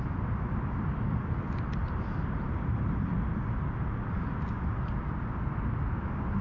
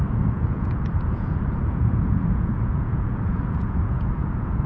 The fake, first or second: second